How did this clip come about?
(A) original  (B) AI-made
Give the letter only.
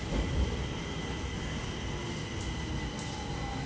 A